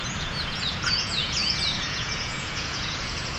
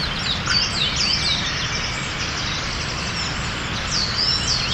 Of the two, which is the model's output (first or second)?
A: first